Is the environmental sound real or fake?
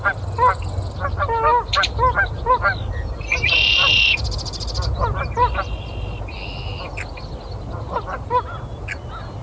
real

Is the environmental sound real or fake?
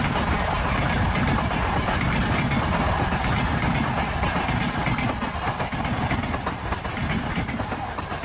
real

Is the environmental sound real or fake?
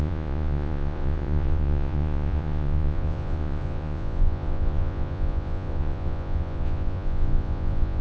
fake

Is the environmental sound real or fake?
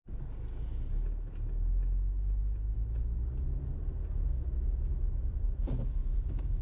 real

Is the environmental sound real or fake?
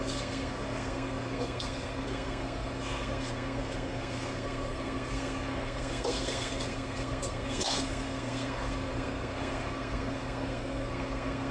fake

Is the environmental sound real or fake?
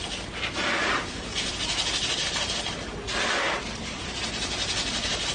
real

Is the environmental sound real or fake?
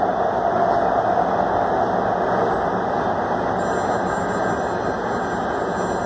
real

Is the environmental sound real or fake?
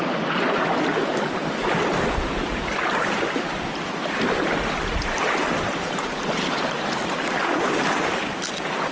fake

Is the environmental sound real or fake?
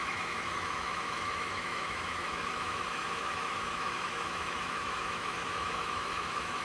fake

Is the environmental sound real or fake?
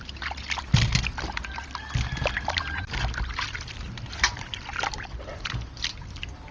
real